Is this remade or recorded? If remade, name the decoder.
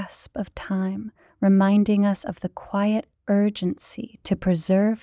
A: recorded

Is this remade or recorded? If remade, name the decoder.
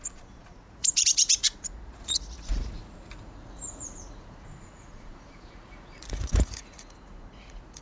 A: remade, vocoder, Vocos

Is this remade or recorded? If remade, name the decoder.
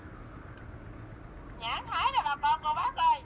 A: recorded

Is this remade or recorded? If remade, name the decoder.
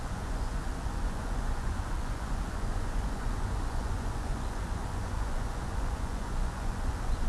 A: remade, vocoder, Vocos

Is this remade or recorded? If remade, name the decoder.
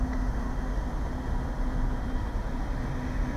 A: recorded